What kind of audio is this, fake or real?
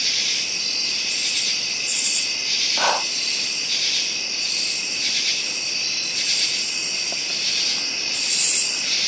real